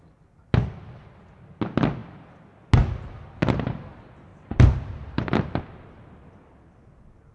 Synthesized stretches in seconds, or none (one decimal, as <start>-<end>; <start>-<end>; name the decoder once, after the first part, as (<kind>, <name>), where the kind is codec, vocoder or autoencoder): 4.3-5.6 (vocoder, BigVGAN v2)